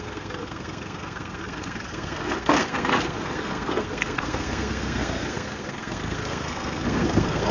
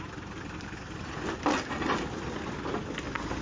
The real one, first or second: second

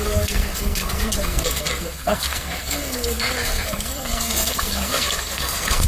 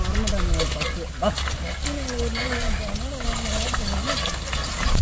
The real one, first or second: second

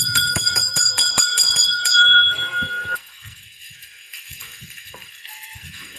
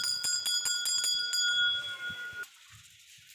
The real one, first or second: second